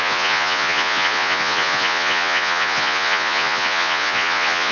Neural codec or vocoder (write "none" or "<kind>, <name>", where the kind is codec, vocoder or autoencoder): vocoder, Vocos